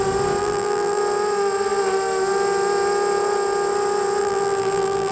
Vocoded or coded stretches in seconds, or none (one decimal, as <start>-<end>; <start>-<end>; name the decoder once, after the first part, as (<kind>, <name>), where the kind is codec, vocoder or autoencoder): 0.4-1.0 (vocoder, BigVGAN v2); 4.2-5.1